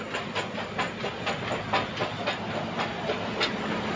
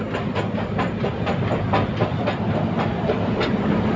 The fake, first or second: second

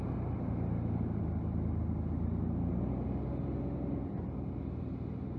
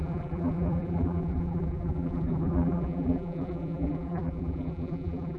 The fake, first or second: second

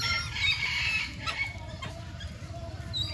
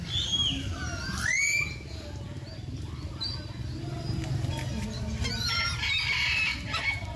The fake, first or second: first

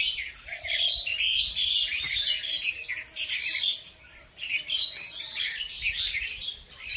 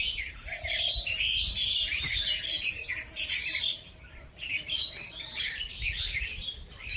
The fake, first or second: second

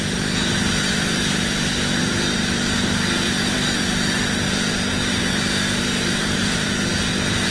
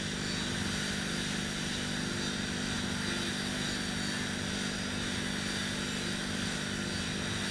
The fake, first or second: first